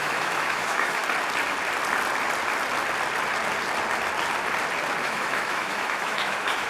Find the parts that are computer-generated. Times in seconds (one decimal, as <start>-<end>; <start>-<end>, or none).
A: 0.0-1.0; 5.0-6.7